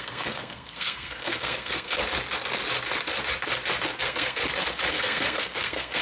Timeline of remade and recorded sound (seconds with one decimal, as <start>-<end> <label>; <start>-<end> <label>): 0.0-2.0 remade; 2.0-4.0 recorded; 4.0-4.4 remade; 4.4-4.9 recorded; 4.9-6.0 remade